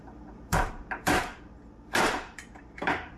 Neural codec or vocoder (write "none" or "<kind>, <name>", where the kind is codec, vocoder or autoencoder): vocoder, BigVGAN v2